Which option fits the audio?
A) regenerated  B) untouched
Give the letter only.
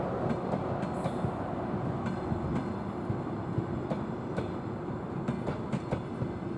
B